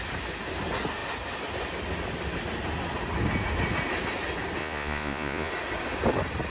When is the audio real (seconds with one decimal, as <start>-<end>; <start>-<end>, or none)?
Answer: 0.0-4.6; 5.5-6.5